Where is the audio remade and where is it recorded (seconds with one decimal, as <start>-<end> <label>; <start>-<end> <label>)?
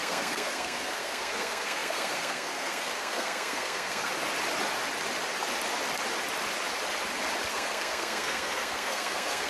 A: 0.0-4.1 remade; 4.1-7.5 recorded; 7.5-9.5 remade